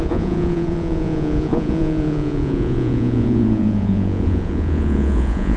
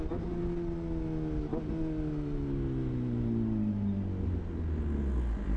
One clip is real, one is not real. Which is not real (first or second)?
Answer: first